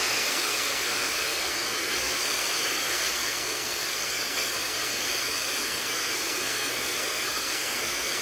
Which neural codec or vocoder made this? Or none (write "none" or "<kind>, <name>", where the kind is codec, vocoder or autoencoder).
codec, SNAC